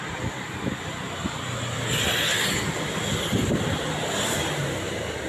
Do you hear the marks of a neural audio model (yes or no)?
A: no